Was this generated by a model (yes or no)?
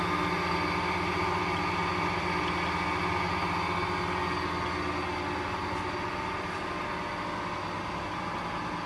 no